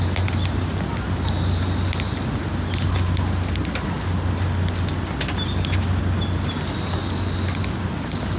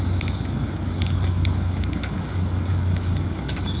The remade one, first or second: second